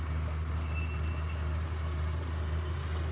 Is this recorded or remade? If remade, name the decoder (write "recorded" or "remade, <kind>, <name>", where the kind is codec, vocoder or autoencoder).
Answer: recorded